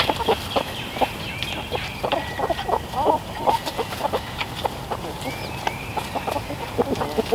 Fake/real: fake